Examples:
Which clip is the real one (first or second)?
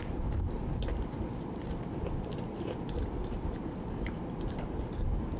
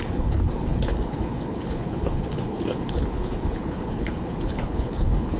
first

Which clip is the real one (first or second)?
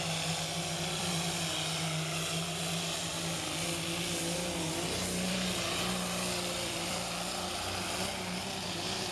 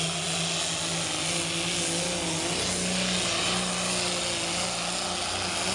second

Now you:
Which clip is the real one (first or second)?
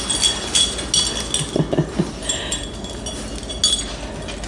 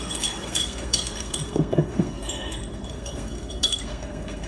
first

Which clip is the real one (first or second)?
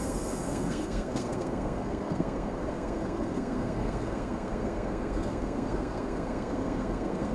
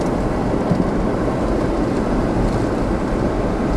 second